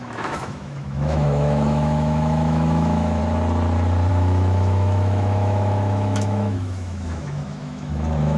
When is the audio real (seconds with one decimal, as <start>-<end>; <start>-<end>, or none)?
3.2-4.1